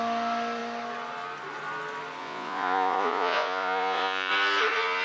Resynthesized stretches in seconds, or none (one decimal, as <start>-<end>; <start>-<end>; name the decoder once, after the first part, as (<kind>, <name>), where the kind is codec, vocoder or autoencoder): 2.2-4.3 (vocoder, Vocos)